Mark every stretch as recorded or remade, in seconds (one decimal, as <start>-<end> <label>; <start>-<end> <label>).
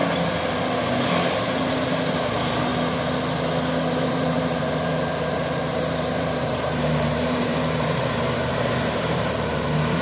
0.0-1.4 recorded; 1.4-2.7 remade; 2.7-3.9 recorded; 3.9-10.0 remade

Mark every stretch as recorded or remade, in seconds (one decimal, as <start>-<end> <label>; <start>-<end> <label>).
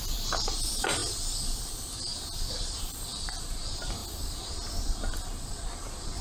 0.0-2.1 remade; 2.1-2.6 recorded; 2.6-4.0 remade; 4.0-4.8 recorded; 4.8-6.2 remade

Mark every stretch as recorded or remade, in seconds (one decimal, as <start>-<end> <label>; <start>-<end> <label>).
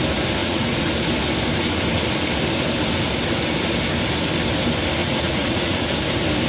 0.0-0.4 recorded; 0.4-0.9 remade; 0.9-5.0 recorded; 5.0-5.9 remade; 5.9-6.5 recorded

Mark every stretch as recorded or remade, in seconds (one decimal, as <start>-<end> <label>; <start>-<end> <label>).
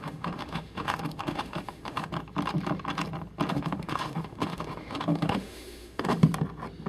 0.0-2.1 remade; 2.1-3.5 recorded; 3.5-6.2 remade; 6.2-6.9 recorded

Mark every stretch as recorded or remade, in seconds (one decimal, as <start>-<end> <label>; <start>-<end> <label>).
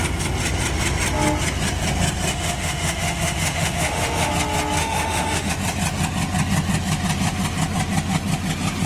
0.0-2.3 recorded; 2.3-4.3 remade; 4.3-4.8 recorded; 4.8-5.5 remade; 5.5-8.9 recorded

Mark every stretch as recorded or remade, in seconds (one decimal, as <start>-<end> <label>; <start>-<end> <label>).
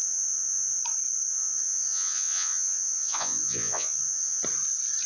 0.0-0.8 remade; 0.8-1.3 recorded; 1.3-4.4 remade; 4.4-5.1 recorded